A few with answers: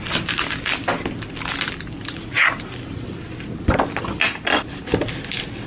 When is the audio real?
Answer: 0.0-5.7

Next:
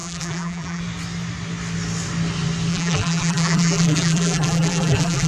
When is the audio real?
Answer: 0.8-2.7

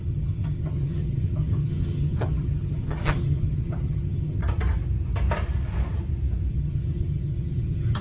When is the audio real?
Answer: 4.4-6.5

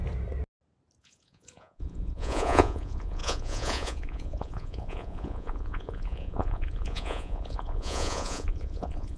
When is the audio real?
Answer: 0.0-1.0

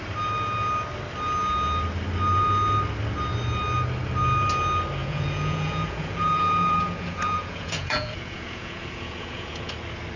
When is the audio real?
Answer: 0.0-5.0; 9.7-10.2

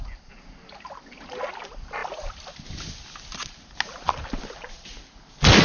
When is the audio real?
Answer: 0.0-5.6